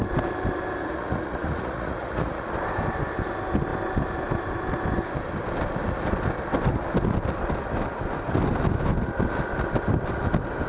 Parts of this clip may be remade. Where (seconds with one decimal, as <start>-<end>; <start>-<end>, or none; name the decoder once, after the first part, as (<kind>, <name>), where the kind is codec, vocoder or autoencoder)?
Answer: 0.8-2.5 (vocoder, Vocos)